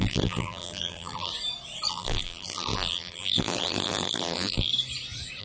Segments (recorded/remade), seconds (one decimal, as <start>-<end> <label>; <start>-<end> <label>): 0.0-1.3 remade; 1.3-1.9 recorded; 1.9-4.7 remade; 4.7-5.4 recorded